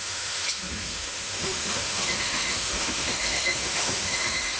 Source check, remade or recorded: remade